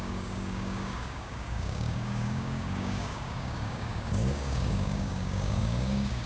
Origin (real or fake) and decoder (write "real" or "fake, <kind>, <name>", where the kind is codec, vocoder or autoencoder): fake, codec, DAC